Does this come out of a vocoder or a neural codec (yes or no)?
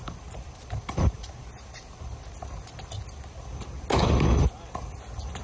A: no